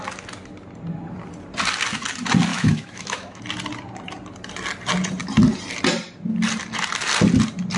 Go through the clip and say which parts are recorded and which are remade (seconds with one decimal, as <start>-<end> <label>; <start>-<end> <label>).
0.0-2.5 recorded; 2.5-3.4 remade; 3.4-7.8 recorded

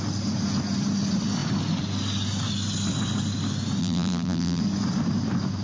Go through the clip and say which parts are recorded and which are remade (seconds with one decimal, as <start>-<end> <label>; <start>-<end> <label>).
0.0-3.8 recorded; 3.8-4.6 remade; 4.6-5.6 recorded

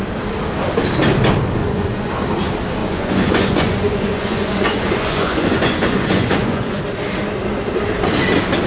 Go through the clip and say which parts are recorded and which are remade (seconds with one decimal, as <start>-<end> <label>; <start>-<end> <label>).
0.0-1.6 recorded; 1.6-2.1 remade; 2.1-2.8 recorded; 2.8-6.8 remade; 6.8-8.7 recorded

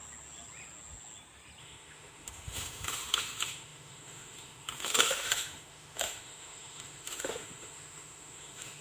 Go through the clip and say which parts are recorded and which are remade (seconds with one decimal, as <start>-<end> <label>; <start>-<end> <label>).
0.0-1.6 recorded; 1.6-8.8 remade

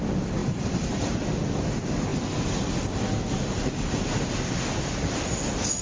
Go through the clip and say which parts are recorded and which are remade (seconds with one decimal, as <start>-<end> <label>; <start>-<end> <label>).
0.0-5.8 recorded